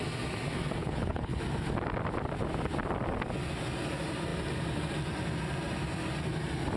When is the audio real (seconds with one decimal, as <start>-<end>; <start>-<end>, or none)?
0.0-0.8; 1.4-6.8